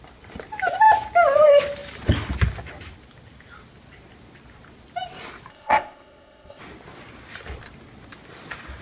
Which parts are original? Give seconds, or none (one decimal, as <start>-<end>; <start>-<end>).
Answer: 0.0-5.5; 6.6-8.8